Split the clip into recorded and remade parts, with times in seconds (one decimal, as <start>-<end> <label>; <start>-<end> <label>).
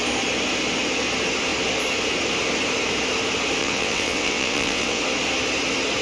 0.0-3.6 recorded; 3.6-5.0 remade; 5.0-6.0 recorded